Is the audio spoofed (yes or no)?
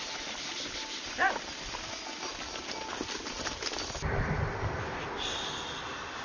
no